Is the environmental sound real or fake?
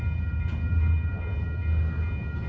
real